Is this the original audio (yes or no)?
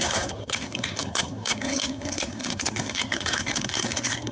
no